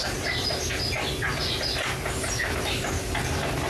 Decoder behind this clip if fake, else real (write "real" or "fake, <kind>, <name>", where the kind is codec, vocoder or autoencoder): real